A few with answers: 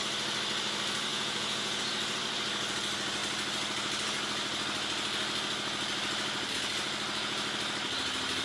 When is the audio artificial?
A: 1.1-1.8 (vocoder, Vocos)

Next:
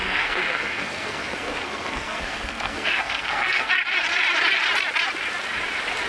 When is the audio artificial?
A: 0.0-3.7 (codec, SNAC)

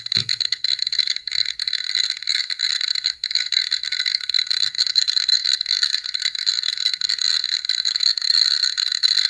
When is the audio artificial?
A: 0.0-9.3 (codec, SNAC)

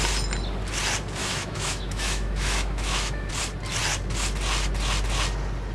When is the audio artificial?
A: 1.2-3.3 (autoencoder, DAC-VAE)